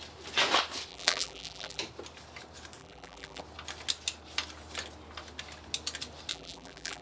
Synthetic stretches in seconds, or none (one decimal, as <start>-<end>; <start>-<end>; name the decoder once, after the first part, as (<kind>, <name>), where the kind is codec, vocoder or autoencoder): 0.9-1.8 (vocoder, BigVGAN v2); 2.8-3.4; 6.3-7.0